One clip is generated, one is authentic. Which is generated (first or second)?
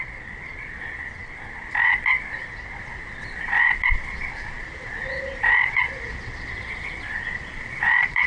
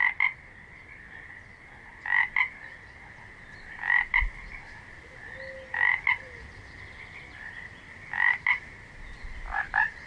first